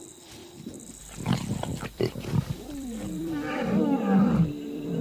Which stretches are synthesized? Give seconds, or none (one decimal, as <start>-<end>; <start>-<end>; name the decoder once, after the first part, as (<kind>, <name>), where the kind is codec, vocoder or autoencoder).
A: 1.7-5.0 (vocoder, BigVGAN v2)